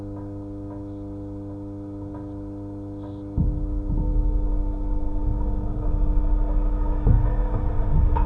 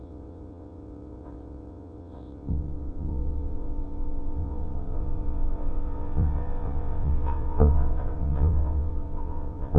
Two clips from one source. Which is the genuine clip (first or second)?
first